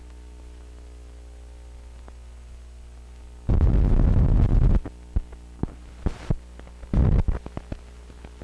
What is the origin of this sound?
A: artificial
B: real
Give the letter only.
B